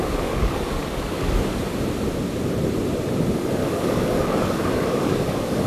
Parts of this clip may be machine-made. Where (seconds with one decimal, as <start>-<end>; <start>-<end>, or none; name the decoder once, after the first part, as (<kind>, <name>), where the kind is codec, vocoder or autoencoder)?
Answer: 0.0-1.6 (codec, DAC); 3.6-5.7